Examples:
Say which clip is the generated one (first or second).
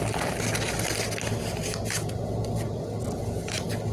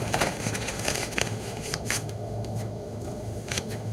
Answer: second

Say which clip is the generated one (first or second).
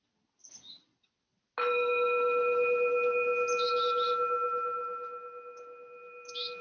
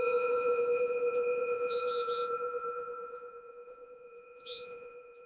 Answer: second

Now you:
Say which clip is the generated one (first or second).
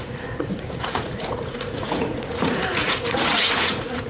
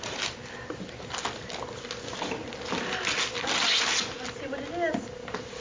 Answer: first